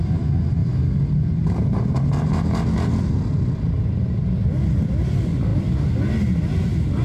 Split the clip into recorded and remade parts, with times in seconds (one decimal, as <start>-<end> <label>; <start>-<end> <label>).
0.0-7.0 recorded